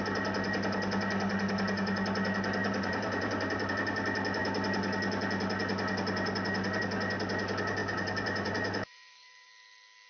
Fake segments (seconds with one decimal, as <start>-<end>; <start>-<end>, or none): 2.6-3.7; 7.8-9.5